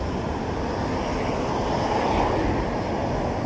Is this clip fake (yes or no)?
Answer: no